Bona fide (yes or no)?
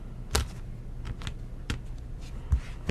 yes